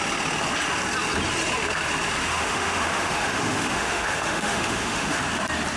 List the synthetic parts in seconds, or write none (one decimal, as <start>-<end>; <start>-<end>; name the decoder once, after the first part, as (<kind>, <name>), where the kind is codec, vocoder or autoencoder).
2.2-5.2 (autoencoder, DAC-VAE)